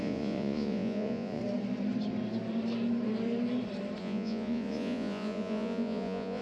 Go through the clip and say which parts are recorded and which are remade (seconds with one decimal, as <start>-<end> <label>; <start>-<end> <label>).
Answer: 0.0-1.4 remade; 1.4-4.0 recorded; 4.0-6.4 remade

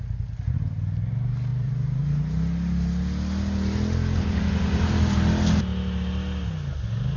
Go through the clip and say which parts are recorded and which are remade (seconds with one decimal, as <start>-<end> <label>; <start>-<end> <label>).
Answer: 0.0-1.5 recorded; 1.5-2.2 remade; 2.2-7.2 recorded

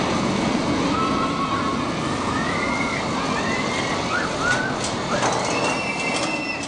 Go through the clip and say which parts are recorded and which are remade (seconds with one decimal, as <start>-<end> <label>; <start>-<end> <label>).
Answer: 0.0-6.7 recorded

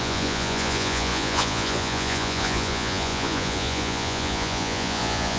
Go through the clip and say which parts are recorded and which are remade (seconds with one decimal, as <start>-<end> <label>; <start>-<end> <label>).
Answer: 0.0-5.4 remade

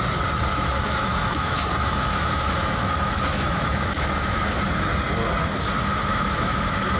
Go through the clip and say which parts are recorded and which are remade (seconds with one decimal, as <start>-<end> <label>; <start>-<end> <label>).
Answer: 0.0-0.5 recorded; 0.5-4.7 remade; 4.7-6.1 recorded; 6.1-7.0 remade

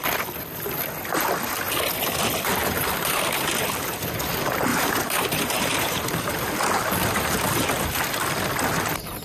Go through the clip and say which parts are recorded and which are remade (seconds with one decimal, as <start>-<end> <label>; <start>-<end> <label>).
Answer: 0.0-2.6 recorded; 2.6-4.2 remade; 4.2-4.7 recorded; 4.7-6.5 remade; 6.5-9.2 recorded

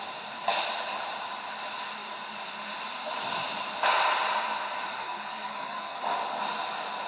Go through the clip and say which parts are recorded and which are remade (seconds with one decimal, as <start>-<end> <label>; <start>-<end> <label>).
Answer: 0.0-5.0 recorded; 5.0-6.0 remade; 6.0-7.1 recorded